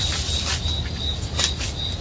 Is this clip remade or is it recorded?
recorded